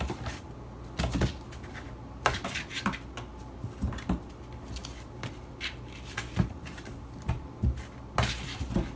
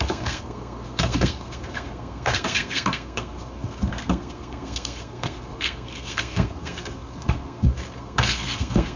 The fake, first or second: second